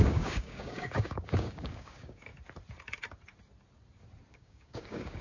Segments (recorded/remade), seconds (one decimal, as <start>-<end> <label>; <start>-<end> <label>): 0.0-2.3 remade; 2.3-4.3 recorded; 4.3-5.2 remade